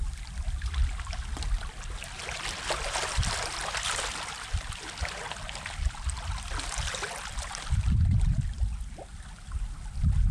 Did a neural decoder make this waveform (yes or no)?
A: no